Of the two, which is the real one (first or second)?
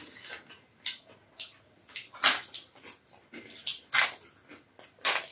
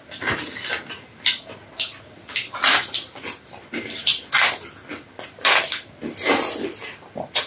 first